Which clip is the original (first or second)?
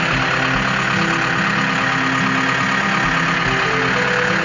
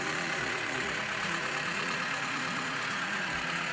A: first